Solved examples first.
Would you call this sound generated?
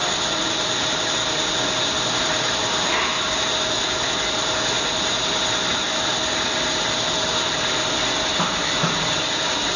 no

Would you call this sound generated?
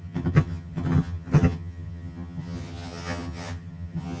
yes